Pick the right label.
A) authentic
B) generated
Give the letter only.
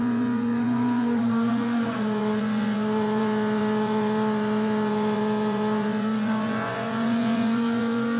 B